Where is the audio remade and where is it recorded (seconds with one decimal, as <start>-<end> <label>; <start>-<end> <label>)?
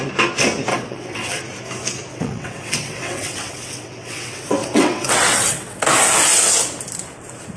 0.0-0.7 recorded; 0.7-1.4 remade; 1.4-2.1 recorded; 2.1-5.8 remade; 5.8-7.6 recorded